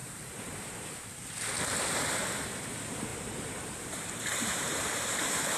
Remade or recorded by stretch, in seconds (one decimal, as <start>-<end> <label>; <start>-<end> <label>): 0.0-1.1 remade; 1.1-3.1 recorded; 3.1-5.6 remade